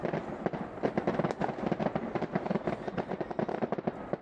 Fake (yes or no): no